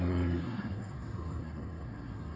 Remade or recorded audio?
remade